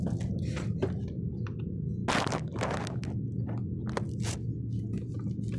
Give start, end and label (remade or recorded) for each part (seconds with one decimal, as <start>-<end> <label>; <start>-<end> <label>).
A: 0.0-5.6 recorded

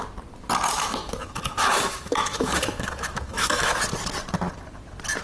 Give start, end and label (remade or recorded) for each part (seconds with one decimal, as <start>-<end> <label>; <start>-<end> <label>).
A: 0.0-0.7 recorded; 0.7-3.8 remade; 3.8-5.2 recorded